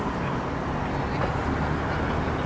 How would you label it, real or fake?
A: real